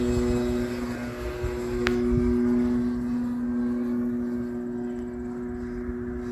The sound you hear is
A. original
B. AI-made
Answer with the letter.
A